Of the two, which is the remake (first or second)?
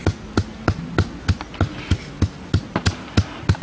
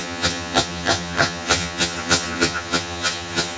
second